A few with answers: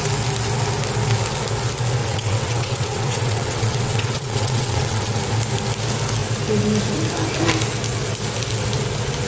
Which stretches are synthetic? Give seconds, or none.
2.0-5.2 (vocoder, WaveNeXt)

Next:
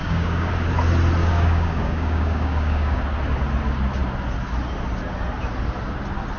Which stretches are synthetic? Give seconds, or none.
0.0-0.5 (codec, DAC); 1.2-3.0

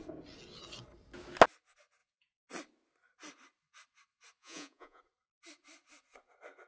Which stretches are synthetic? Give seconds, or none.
4.4-5.0 (vocoder, Vocos)

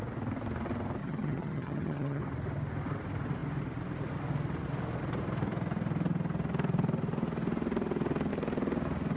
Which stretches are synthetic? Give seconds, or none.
1.0-2.2 (vocoder, HiFi-GAN)

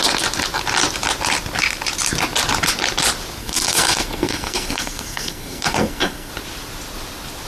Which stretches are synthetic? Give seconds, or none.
3.4-6.3 (codec, SNAC)

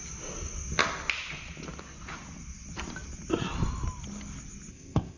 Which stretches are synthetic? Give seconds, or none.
4.7-5.2 (codec, ZipCodec)

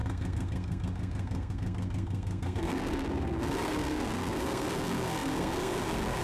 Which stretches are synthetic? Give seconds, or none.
0.0-6.2 (codec, SNAC)